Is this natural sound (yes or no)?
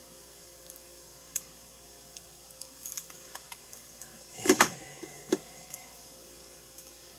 no